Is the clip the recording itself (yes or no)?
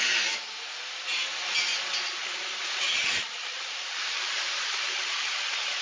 yes